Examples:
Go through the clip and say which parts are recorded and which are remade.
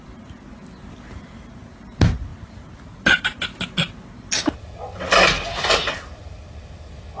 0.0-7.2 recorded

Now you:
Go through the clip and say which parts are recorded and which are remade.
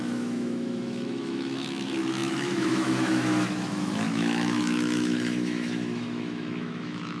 0.0-7.2 remade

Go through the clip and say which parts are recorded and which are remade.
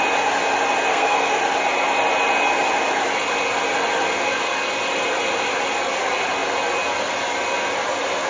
0.0-0.9 recorded; 0.9-1.4 remade; 1.4-8.3 recorded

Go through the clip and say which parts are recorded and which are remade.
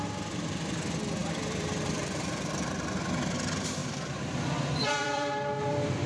0.0-1.2 recorded; 1.2-2.7 remade; 2.7-3.8 recorded; 3.8-5.3 remade; 5.3-6.1 recorded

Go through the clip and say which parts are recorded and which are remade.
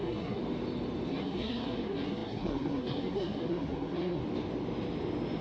0.0-0.4 remade; 0.4-1.1 recorded; 1.1-4.2 remade; 4.2-5.4 recorded